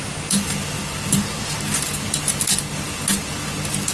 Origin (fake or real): real